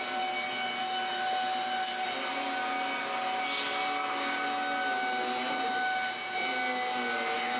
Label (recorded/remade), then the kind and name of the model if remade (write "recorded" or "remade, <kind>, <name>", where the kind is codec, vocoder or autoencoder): recorded